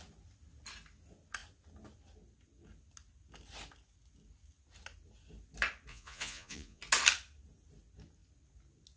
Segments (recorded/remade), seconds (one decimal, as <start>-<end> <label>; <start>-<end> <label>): 0.0-5.9 recorded; 5.9-6.8 remade; 6.8-9.0 recorded